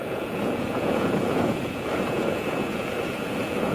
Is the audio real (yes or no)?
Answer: no